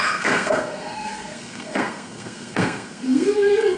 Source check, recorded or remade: remade